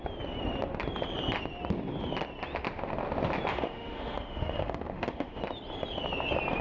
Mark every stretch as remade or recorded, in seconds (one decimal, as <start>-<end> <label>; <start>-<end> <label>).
0.0-3.5 recorded; 3.5-5.4 remade; 5.4-6.6 recorded